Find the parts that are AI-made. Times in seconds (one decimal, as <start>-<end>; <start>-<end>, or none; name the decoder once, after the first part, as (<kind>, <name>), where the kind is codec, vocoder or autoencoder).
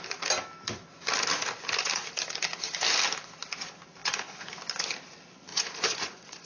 4.0-4.5 (vocoder, Vocos); 5.5-6.5